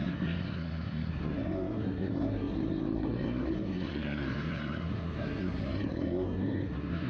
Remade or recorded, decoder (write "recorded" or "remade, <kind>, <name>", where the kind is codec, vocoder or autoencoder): remade, codec, SNAC